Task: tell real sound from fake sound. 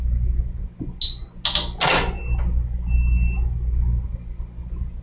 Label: real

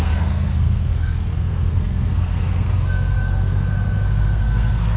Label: fake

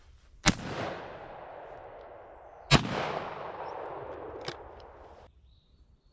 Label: real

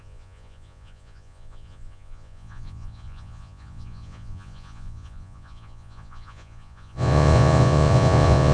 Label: fake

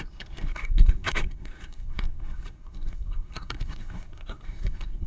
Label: fake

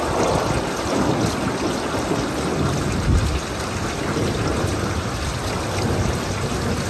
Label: real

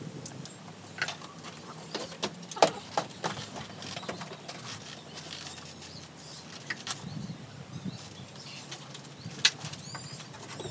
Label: real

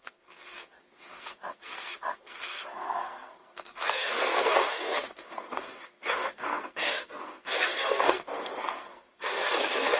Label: fake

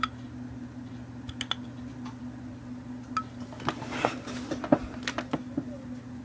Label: real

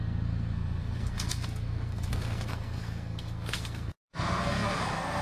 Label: fake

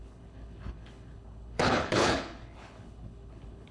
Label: fake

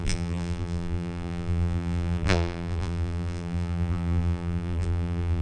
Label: fake